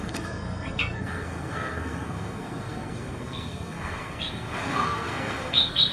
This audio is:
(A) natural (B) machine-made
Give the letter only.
B